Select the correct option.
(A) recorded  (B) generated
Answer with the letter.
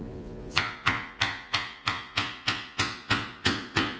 B